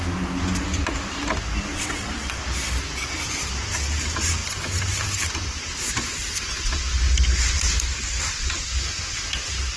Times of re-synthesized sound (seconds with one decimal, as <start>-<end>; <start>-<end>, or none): 1.7-2.4